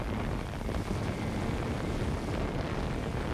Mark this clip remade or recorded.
recorded